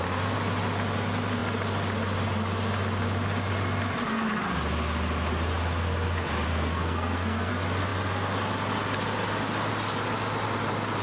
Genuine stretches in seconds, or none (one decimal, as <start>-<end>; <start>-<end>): 0.0-6.5; 7.5-11.0